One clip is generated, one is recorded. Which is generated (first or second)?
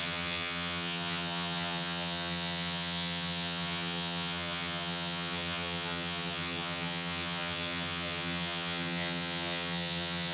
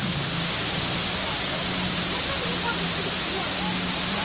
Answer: first